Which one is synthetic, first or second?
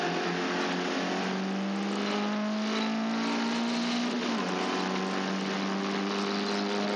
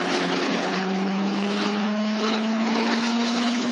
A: second